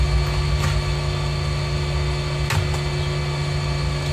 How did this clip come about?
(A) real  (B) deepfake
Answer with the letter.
A